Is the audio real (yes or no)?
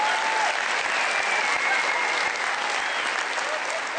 yes